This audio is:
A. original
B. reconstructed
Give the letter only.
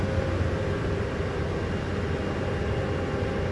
A